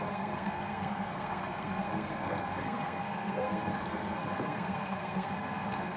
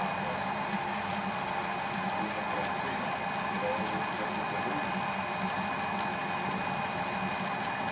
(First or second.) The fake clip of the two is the first